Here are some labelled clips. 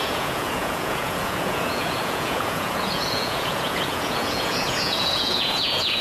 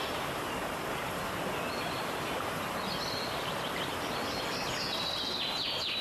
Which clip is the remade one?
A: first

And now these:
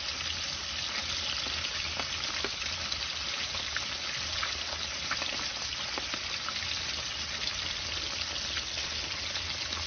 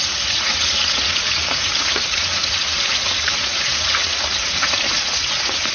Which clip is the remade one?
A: second